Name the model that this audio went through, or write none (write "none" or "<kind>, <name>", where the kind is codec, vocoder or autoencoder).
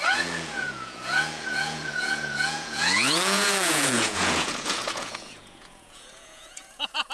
vocoder, Vocos